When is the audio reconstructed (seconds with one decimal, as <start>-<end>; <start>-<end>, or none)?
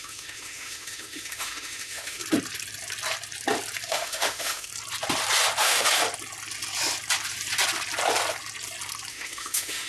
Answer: 0.0-2.2; 3.9-4.7; 5.6-6.0; 9.1-9.9